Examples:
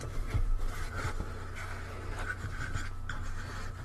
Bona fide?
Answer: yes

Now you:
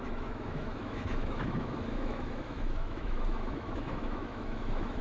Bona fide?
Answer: no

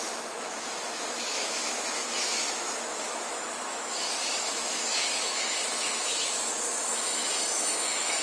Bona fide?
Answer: no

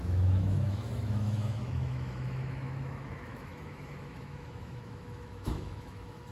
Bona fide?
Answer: no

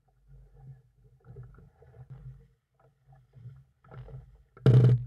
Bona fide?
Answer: yes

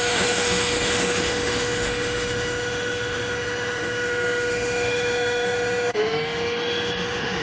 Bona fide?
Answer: no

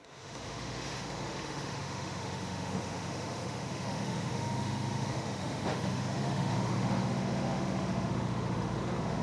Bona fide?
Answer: no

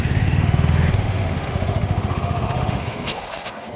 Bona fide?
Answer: no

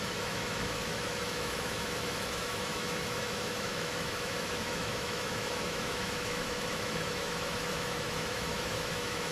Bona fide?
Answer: no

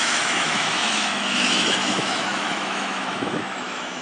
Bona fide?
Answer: no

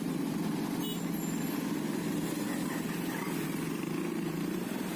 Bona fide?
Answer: yes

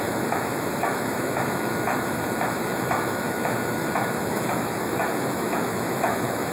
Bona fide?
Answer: no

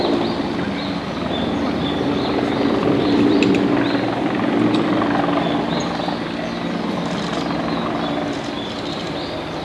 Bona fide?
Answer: yes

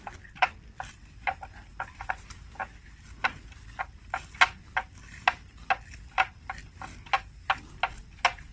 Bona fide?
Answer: yes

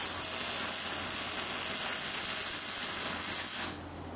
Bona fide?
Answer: yes